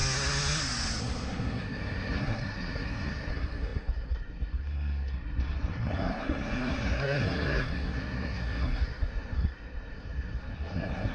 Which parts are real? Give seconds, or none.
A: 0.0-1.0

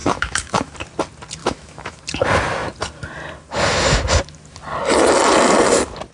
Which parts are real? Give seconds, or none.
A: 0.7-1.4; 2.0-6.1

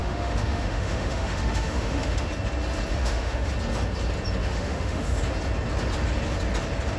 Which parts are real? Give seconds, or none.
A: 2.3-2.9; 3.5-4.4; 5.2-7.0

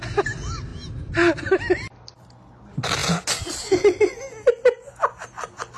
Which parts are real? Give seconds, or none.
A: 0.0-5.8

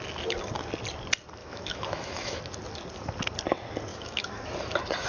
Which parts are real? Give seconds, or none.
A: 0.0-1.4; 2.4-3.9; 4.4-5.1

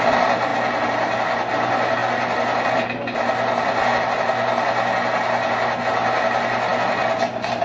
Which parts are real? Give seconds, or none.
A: 0.0-7.6

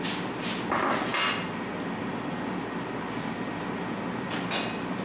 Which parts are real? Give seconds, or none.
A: 0.0-5.0

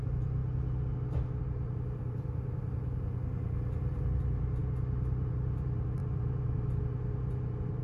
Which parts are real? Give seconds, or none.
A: 0.4-1.4